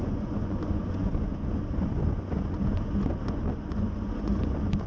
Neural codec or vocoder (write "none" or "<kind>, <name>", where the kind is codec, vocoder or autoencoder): vocoder, Vocos